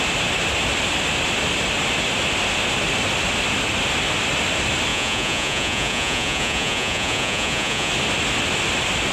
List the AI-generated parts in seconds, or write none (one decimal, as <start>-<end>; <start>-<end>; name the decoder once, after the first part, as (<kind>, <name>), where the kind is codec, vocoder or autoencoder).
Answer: 4.9-7.9 (vocoder, Vocos)